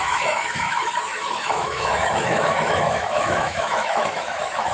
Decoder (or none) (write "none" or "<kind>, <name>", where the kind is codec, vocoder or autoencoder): autoencoder, DAC-VAE